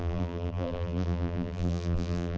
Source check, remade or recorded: remade